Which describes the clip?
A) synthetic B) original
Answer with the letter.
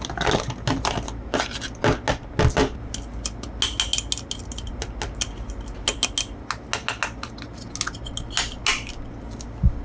B